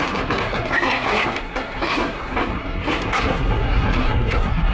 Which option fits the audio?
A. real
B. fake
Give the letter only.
B